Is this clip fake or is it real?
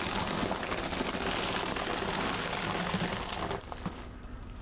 real